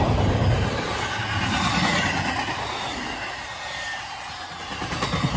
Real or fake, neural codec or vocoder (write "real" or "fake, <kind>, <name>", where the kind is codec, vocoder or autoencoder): real